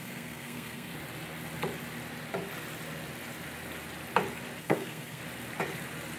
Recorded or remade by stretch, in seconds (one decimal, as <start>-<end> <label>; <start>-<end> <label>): 0.0-0.9 remade; 0.9-4.6 recorded; 4.6-5.2 remade; 5.2-6.2 recorded